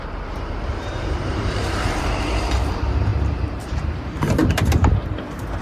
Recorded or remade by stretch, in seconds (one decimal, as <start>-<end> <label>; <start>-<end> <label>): 0.0-5.6 remade